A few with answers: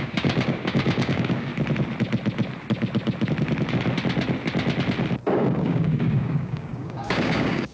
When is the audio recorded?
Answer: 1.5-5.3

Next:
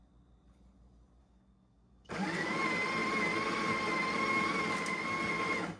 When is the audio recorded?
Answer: 0.0-1.2; 2.5-5.8

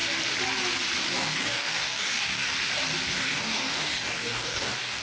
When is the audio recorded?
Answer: 0.0-1.0; 2.5-3.1